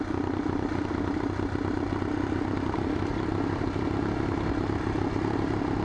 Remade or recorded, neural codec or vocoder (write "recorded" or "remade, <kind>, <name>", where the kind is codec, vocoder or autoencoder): remade, vocoder, BigVGAN v2